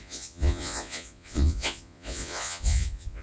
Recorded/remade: remade